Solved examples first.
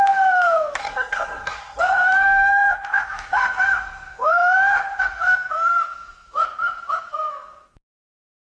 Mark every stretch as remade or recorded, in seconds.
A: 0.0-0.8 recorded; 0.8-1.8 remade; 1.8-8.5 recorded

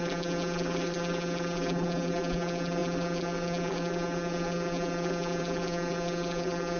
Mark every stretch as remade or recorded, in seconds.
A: 0.0-6.8 remade

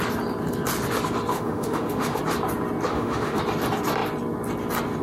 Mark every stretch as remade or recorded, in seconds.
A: 0.0-1.3 recorded; 1.3-2.2 remade; 2.2-2.9 recorded; 2.9-3.4 remade; 3.4-5.0 recorded

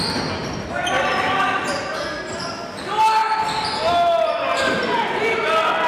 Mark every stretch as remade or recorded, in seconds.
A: 0.0-5.9 recorded